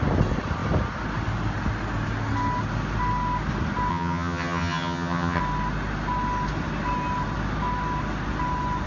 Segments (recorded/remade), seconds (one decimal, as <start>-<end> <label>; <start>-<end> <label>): 0.0-3.9 recorded; 3.9-5.4 remade; 5.4-8.9 recorded